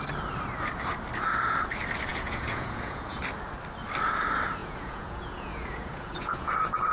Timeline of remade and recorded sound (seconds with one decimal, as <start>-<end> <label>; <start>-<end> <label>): 0.0-2.1 recorded; 2.1-3.2 remade; 3.2-4.6 recorded; 4.6-6.5 remade; 6.5-6.9 recorded